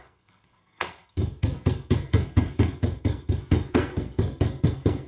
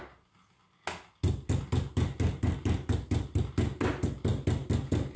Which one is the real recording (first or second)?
second